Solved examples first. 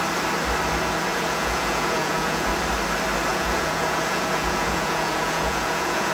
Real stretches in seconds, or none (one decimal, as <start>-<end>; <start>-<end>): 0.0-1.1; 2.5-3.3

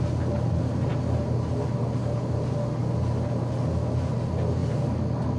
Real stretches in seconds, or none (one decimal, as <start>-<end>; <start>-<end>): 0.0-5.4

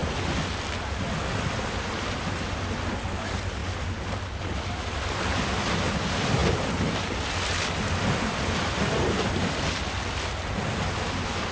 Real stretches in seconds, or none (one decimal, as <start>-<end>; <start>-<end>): 0.0-11.5

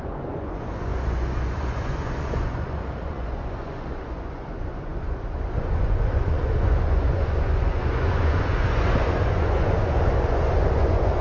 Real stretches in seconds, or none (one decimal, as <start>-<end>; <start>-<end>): none

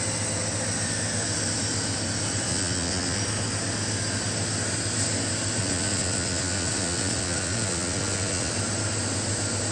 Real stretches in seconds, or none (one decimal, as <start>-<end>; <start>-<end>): 0.0-2.5; 3.2-5.6; 8.5-9.7